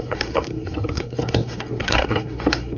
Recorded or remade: remade